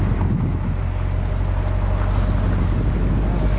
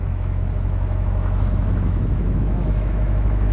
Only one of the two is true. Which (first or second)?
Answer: first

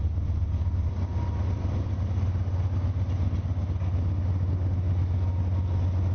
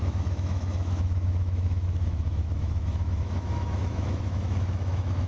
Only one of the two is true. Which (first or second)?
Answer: first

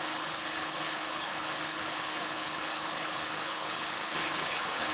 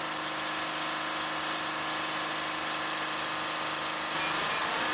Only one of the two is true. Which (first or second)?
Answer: second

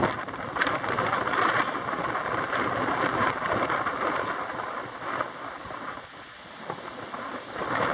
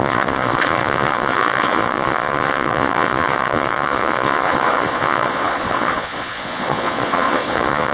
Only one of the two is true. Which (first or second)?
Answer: first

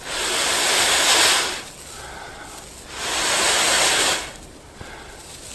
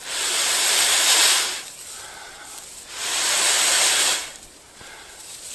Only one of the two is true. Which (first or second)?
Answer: first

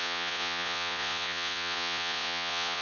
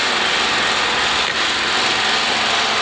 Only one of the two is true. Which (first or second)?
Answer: second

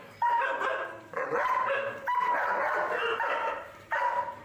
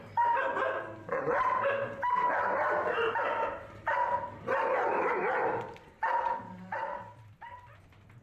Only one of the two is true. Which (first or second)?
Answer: second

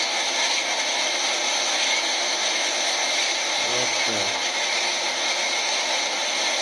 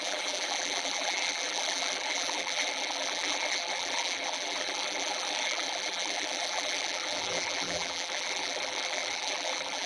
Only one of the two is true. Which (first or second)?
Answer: first